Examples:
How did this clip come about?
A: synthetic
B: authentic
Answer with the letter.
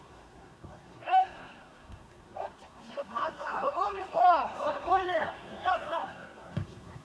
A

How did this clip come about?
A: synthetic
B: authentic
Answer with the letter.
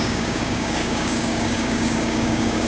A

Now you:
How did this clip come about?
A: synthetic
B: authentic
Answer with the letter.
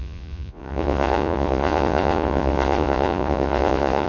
A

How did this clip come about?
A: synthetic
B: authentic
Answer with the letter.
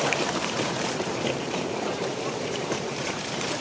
A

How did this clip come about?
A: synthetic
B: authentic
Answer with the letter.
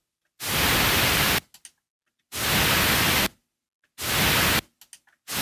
B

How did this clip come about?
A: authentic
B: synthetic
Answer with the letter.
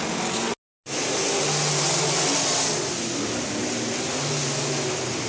A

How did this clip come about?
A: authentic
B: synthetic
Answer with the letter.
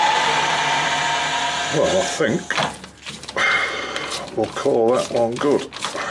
A